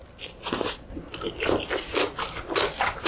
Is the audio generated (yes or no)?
no